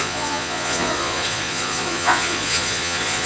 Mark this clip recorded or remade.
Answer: remade